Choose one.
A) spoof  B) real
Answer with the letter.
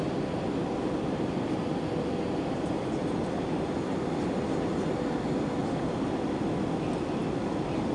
B